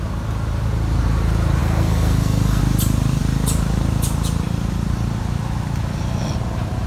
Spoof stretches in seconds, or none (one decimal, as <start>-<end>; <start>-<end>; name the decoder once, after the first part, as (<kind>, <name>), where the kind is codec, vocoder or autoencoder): 1.6-2.6 (codec, SNAC)